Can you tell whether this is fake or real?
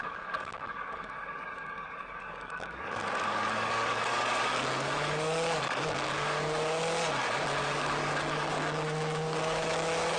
fake